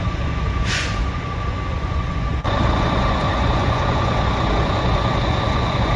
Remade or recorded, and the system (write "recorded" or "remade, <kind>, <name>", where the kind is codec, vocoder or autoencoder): remade, vocoder, Vocos